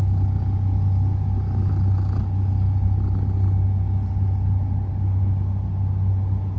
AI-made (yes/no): no